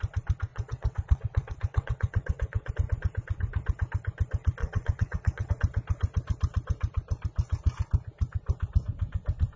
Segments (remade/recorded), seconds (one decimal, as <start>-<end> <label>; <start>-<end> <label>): 0.0-0.5 recorded; 0.5-2.7 remade; 2.7-4.6 recorded; 4.6-5.5 remade; 5.5-9.6 recorded